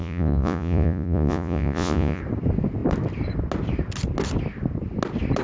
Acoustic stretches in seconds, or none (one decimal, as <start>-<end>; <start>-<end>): 2.2-5.4